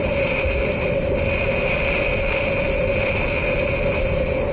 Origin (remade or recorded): recorded